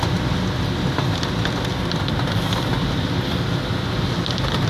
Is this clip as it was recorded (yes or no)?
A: yes